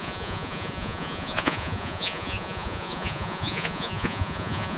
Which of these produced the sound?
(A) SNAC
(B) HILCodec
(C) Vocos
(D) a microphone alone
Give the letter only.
C